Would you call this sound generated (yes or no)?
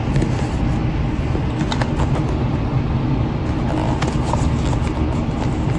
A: no